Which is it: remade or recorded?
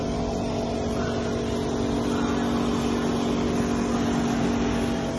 recorded